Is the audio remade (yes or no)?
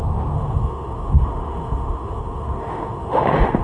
yes